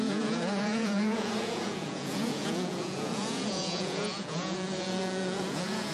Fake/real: fake